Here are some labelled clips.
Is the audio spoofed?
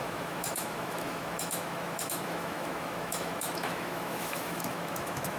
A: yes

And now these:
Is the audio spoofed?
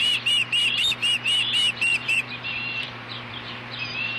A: yes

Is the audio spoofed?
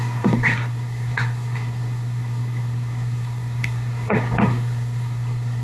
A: yes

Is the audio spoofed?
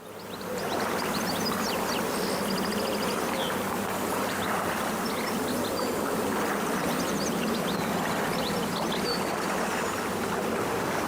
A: no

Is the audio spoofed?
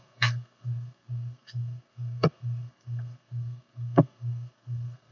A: yes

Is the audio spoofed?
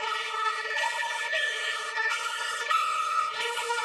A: yes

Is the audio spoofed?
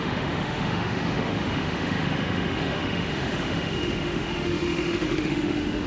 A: yes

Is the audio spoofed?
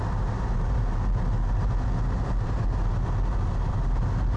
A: no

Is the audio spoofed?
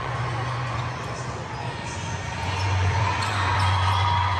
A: yes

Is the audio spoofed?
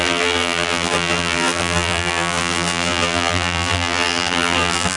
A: yes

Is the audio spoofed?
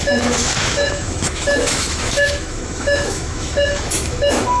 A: yes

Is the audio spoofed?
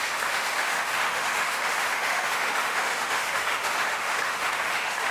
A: yes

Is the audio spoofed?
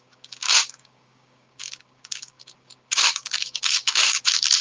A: yes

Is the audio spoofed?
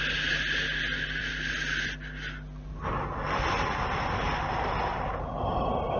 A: no